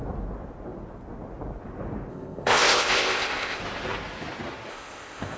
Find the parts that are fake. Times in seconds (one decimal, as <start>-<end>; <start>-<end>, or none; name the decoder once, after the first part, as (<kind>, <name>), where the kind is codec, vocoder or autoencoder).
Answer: 2.1-3.6 (codec, ZipCodec); 4.7-5.4